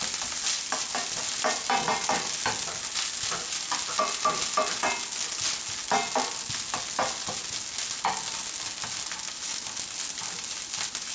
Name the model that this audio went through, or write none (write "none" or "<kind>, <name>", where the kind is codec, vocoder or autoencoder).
none